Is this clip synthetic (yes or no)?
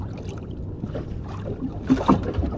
no